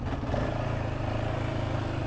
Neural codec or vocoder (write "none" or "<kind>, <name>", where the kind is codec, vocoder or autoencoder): none